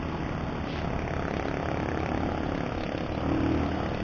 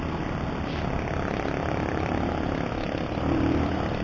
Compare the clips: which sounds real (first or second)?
first